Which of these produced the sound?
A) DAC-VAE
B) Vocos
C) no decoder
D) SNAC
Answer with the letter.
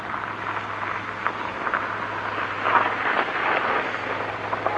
C